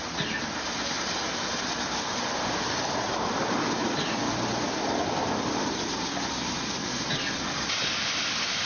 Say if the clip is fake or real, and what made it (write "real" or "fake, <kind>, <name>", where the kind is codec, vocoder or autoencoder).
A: real